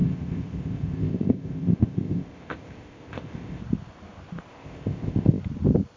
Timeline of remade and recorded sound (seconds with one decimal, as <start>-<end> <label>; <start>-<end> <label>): 0.0-3.6 remade; 3.6-4.5 recorded; 4.5-5.4 remade; 5.4-6.0 recorded